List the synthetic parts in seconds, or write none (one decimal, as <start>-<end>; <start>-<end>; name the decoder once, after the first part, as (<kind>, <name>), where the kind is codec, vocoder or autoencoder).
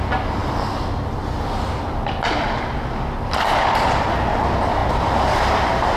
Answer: none